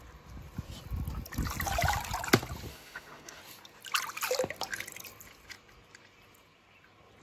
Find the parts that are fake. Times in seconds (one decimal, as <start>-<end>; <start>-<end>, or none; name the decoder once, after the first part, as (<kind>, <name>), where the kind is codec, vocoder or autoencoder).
2.7-3.4 (autoencoder, DAC-VAE)

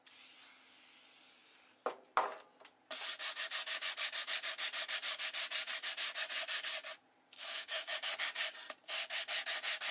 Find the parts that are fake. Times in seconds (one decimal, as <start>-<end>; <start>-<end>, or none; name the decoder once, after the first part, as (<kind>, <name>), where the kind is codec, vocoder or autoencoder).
7.4-7.9 (autoencoder, DAC-VAE)

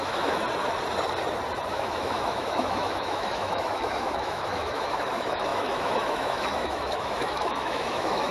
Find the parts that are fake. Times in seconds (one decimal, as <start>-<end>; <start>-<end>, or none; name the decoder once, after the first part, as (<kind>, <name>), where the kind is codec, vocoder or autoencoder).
0.0-0.4 (autoencoder, DAC-VAE); 1.7-8.3

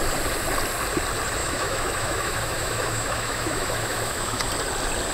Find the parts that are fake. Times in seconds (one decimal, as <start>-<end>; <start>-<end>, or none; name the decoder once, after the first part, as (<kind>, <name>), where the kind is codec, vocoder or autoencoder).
1.4-4.5 (autoencoder, DAC-VAE)

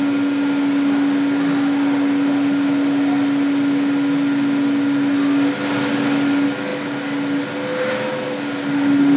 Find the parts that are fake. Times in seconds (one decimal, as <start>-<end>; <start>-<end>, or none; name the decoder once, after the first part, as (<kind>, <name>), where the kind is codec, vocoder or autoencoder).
none

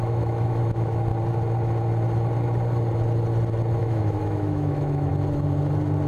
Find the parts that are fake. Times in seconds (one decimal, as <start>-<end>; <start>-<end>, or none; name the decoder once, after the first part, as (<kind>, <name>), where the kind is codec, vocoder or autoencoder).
0.0-1.1 (autoencoder, DAC-VAE); 3.8-5.1

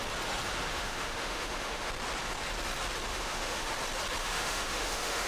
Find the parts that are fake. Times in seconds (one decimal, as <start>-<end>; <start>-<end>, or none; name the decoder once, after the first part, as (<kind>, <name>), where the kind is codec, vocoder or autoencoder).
0.7-1.9 (autoencoder, DAC-VAE); 3.1-3.7; 4.2-5.3

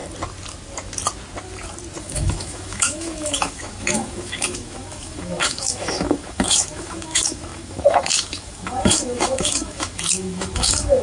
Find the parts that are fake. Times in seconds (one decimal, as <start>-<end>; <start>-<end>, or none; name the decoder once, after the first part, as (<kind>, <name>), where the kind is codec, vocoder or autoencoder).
2.0-11.0 (autoencoder, DAC-VAE)